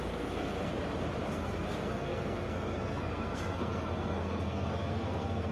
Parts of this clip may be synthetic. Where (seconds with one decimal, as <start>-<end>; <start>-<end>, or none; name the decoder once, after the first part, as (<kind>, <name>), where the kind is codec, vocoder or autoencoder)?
0.0-0.7 (codec, SNAC); 1.3-5.5